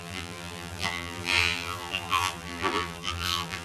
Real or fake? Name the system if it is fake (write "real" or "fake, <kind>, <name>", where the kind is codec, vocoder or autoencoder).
fake, vocoder, BigVGAN v2